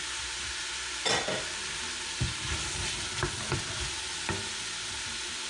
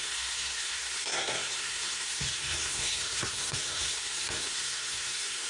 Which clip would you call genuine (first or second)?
first